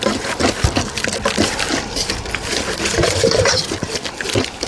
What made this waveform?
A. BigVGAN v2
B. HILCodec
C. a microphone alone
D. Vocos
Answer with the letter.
C